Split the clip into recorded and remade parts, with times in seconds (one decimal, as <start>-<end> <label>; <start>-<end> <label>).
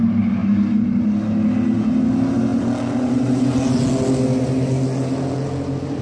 0.0-6.0 recorded